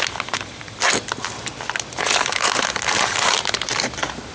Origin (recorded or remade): recorded